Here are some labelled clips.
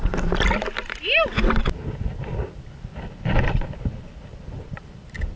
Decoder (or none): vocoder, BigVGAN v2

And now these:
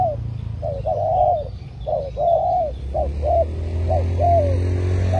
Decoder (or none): none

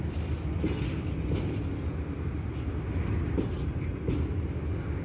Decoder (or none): none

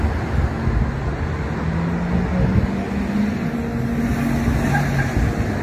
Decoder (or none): none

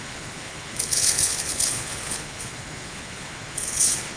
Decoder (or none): codec, HILCodec